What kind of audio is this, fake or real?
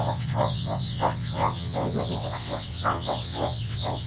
fake